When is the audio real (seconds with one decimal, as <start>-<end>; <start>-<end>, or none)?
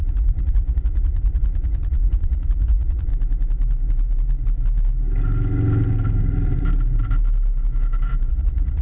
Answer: 3.1-8.3